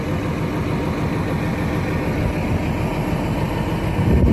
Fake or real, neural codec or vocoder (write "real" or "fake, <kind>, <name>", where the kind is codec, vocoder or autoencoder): real